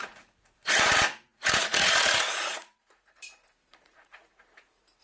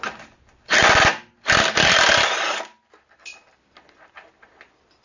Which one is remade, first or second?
first